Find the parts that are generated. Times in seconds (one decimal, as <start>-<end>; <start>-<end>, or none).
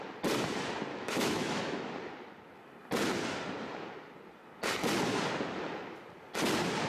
0.9-1.9